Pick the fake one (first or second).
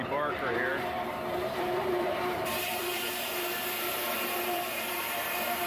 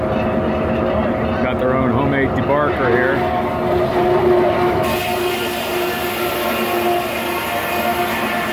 first